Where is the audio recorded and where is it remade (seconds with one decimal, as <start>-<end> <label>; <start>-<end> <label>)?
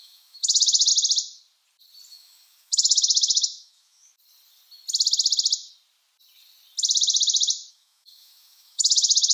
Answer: 0.0-0.9 remade; 0.9-2.1 recorded; 2.1-4.1 remade; 4.1-7.7 recorded; 7.7-9.3 remade